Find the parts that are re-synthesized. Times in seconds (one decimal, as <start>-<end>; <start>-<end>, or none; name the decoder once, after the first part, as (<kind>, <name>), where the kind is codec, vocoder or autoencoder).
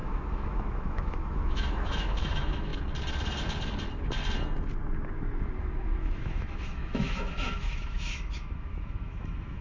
0.0-2.7 (autoencoder, DAC-VAE); 5.6-9.6